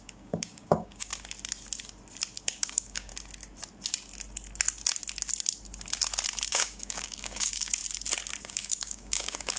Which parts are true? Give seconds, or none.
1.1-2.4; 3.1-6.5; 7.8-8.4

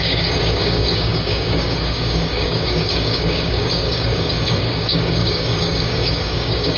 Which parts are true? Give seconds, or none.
none

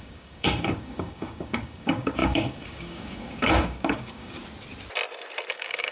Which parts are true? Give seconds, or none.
4.4-5.5

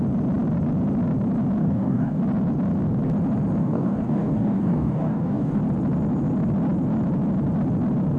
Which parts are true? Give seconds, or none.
0.0-1.6; 2.2-3.6; 5.6-8.2

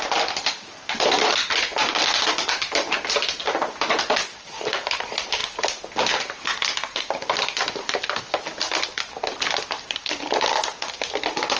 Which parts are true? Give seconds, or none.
0.0-11.6